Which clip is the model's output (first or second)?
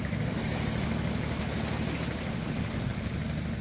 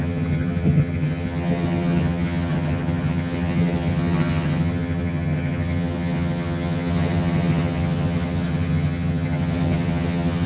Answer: second